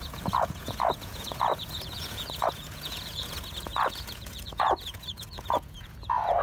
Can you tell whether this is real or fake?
fake